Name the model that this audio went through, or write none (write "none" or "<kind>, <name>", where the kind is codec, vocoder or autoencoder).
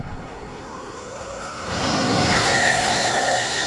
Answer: codec, SNAC